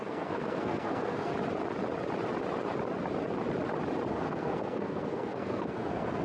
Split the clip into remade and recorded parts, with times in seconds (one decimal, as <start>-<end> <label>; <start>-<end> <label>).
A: 0.0-1.3 remade; 1.3-4.1 recorded; 4.1-6.2 remade